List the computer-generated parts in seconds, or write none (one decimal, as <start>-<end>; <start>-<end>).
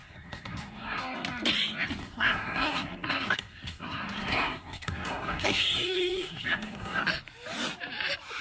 0.0-1.0; 2.0-7.0